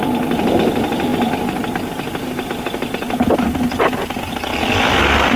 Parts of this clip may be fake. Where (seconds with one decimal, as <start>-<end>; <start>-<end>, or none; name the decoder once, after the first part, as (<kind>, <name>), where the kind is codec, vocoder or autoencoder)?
none